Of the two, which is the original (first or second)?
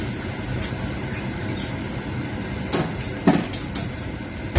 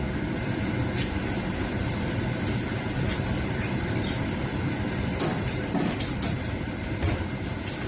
first